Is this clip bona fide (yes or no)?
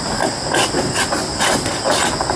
yes